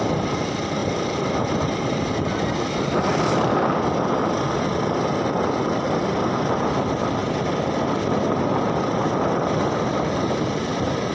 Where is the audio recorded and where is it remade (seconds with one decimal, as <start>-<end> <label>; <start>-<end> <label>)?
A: 0.0-11.1 recorded